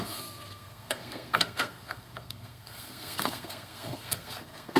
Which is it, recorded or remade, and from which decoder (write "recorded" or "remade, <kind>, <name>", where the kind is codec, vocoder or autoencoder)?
remade, codec, SNAC